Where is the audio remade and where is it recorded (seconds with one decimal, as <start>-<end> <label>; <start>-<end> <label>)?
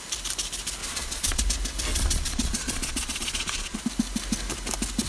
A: 0.0-0.8 recorded; 0.8-1.4 remade; 1.4-1.9 recorded; 1.9-3.8 remade; 3.8-5.1 recorded